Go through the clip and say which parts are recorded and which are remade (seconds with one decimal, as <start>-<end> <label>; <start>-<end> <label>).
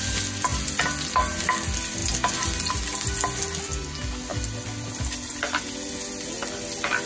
0.0-7.1 recorded